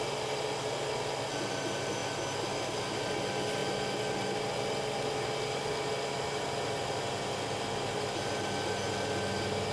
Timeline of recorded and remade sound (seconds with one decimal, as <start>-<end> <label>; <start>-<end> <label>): 0.0-9.7 recorded